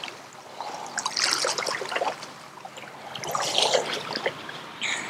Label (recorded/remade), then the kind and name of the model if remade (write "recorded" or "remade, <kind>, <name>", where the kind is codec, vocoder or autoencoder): recorded